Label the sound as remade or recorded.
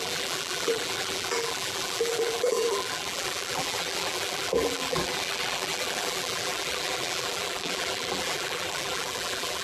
remade